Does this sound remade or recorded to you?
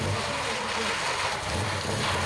recorded